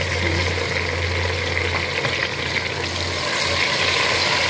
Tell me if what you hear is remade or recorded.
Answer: recorded